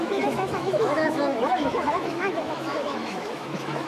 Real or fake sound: fake